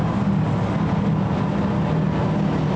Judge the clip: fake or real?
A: real